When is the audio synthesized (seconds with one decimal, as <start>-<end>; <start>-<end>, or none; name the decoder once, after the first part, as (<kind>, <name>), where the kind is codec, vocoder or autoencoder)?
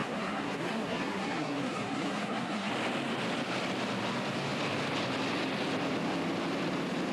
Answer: 0.0-2.7 (codec, SNAC)